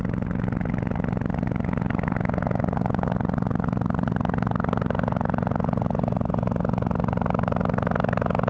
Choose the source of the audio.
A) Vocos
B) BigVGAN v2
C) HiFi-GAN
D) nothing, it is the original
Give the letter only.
D